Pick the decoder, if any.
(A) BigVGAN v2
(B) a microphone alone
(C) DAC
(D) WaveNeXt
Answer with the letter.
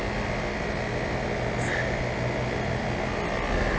B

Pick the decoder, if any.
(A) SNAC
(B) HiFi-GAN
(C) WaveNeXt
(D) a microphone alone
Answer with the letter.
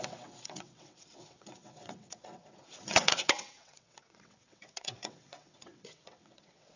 C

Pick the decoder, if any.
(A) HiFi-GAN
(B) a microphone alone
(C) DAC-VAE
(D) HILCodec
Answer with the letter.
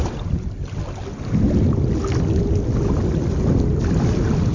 B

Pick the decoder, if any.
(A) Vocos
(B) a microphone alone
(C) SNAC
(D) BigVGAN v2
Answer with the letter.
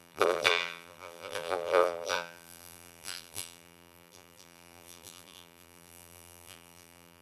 D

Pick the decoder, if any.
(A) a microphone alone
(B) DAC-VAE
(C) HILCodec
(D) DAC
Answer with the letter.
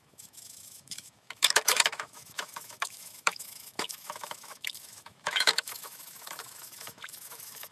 B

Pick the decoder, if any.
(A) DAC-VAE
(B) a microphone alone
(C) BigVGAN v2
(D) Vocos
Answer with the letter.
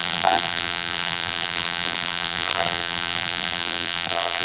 C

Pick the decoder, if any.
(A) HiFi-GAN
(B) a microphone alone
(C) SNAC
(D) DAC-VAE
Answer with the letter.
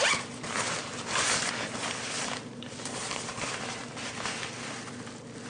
B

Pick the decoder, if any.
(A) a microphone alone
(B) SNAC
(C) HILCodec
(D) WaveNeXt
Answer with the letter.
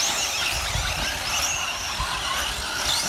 A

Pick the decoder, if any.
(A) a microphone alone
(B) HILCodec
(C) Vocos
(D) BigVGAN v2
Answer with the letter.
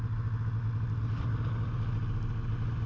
A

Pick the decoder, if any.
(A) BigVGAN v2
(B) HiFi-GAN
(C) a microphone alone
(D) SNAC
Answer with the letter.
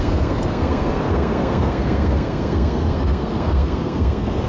D